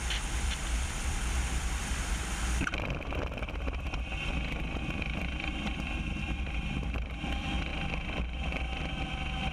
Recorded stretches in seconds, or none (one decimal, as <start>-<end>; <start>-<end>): 7.7-8.4